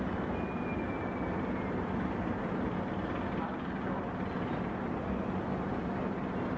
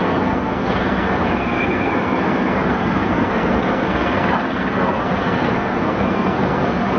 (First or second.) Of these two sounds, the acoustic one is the first